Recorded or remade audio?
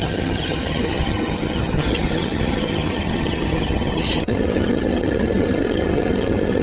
remade